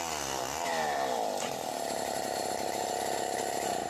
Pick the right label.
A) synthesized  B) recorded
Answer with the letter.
B